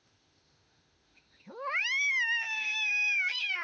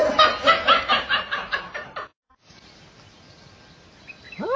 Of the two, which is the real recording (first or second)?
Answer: second